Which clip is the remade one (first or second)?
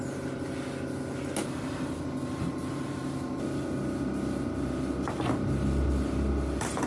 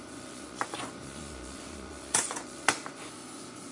second